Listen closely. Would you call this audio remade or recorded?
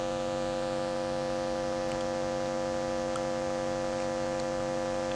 recorded